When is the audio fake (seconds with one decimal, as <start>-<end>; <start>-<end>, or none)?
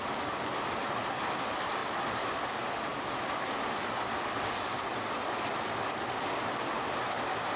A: 1.8-2.4; 2.9-4.5